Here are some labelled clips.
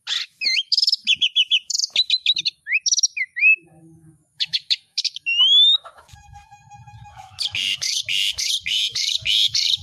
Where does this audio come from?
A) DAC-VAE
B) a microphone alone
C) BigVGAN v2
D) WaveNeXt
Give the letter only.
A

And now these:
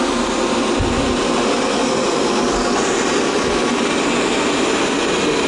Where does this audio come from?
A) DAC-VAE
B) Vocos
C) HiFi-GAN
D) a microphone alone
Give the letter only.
D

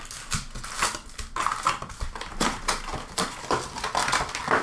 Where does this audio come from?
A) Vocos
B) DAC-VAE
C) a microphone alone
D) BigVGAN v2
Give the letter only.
C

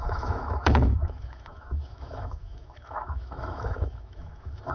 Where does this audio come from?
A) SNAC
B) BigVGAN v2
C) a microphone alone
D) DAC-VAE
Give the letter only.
D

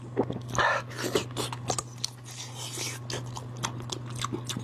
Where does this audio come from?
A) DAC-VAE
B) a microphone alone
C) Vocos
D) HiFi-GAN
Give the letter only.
B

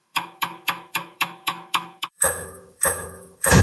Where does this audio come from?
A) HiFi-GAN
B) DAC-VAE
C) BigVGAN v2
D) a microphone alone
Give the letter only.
B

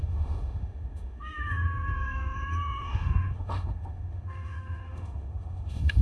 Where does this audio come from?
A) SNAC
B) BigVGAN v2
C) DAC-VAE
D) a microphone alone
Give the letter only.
C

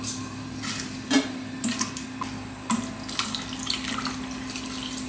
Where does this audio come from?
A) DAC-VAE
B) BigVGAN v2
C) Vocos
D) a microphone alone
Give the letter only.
D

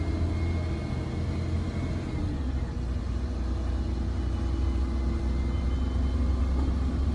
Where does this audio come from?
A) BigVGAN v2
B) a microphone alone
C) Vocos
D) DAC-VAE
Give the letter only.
B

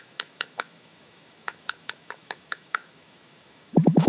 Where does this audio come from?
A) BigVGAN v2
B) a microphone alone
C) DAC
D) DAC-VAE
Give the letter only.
D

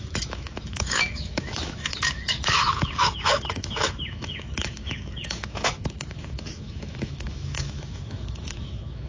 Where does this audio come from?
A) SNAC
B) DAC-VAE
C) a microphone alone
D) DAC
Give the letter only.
B